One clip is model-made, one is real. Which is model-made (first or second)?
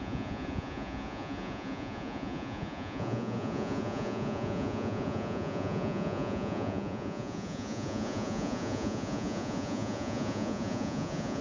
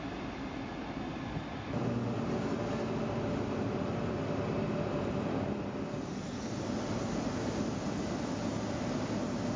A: first